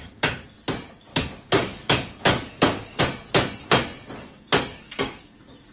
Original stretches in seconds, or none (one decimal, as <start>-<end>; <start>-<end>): 0.0-1.1; 3.0-4.7; 5.3-5.7